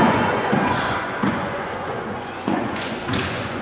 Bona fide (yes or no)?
no